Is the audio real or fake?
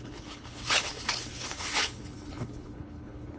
fake